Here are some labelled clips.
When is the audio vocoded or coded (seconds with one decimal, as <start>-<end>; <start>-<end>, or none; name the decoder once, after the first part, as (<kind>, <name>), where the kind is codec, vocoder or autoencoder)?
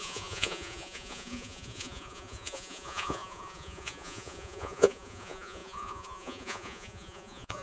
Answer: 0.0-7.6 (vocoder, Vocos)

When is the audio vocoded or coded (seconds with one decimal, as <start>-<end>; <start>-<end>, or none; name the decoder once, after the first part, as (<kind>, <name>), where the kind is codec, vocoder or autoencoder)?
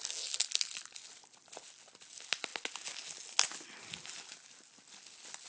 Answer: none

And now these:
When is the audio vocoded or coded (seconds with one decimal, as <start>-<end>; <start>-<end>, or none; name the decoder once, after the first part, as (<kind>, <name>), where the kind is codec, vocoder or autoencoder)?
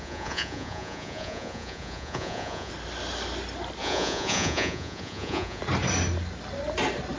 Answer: 0.0-2.7 (vocoder, Vocos); 3.8-5.6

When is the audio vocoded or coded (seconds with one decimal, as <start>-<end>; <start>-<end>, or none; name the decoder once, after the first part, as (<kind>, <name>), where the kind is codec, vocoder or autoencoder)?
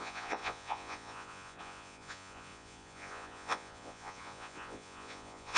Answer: 0.0-5.6 (vocoder, Vocos)